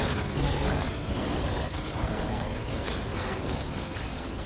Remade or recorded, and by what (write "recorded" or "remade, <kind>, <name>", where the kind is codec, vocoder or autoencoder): remade, codec, SNAC